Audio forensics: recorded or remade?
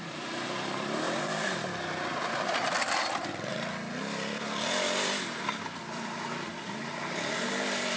remade